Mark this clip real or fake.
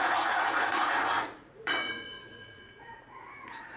fake